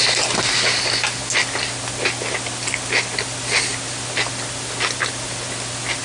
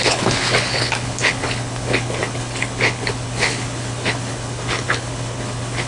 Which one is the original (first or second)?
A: first